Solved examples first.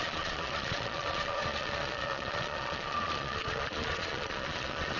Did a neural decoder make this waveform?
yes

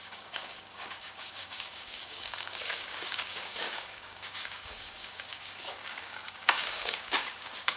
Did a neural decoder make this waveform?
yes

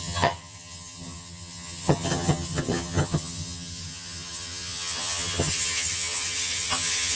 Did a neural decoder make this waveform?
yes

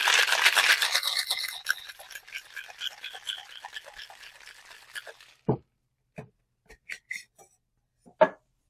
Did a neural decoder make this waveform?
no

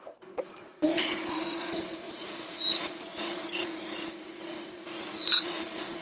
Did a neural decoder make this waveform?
yes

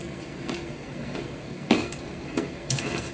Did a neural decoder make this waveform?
yes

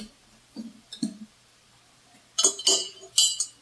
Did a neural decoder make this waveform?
no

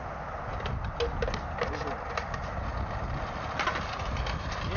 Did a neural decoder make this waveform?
no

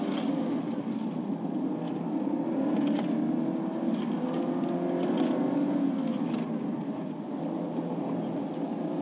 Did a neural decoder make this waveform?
no